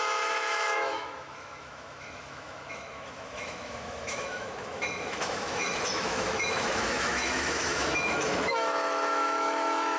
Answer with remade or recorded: remade